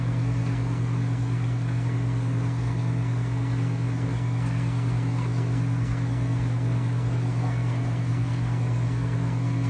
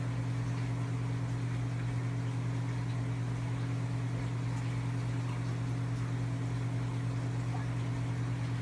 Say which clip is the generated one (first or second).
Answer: first